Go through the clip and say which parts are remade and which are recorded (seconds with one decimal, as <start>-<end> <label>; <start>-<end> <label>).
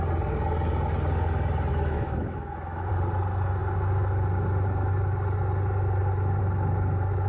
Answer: 0.0-1.7 recorded; 1.7-2.9 remade; 2.9-7.3 recorded